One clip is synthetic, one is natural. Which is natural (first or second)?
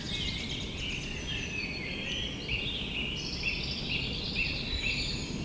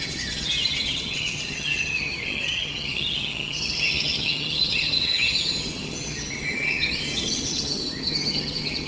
first